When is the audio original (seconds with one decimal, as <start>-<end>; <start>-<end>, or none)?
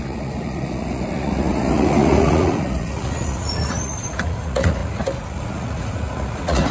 none